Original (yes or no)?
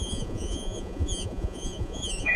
no